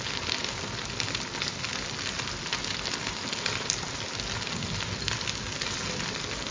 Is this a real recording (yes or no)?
yes